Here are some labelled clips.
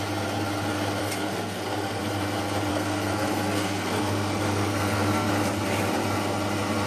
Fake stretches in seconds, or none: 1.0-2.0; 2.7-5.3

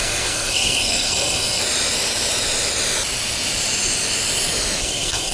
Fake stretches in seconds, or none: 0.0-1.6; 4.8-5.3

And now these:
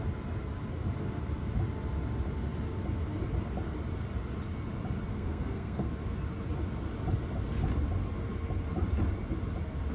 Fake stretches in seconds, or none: 5.1-5.9